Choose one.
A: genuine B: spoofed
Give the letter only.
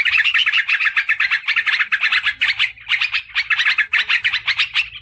A